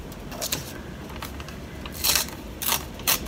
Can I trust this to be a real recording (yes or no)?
no